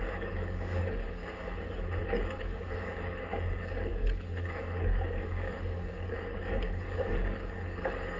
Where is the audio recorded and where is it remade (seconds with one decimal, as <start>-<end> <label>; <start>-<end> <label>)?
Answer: 0.0-1.2 remade; 1.2-2.0 recorded; 2.0-8.2 remade